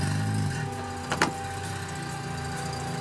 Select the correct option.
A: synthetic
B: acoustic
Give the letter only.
B